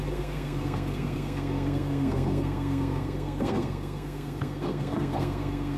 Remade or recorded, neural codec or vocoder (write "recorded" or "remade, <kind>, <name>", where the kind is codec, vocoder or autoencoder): remade, codec, SNAC